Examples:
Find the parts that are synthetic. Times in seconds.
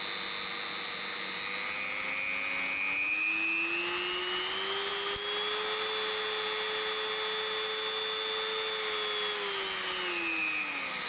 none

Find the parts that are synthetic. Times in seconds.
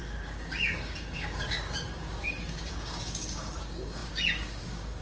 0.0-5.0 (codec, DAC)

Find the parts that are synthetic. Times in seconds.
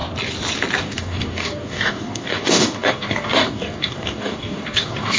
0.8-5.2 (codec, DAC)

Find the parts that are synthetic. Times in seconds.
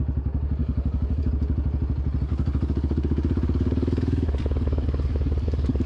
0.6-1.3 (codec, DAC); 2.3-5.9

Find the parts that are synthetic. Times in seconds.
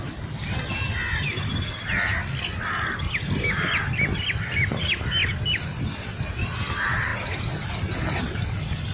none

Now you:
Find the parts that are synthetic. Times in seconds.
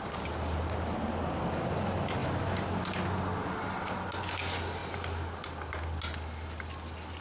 none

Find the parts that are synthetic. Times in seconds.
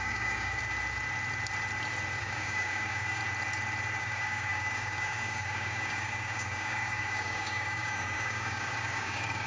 0.0-0.6 (codec, DAC); 2.2-3.2; 4.0-9.5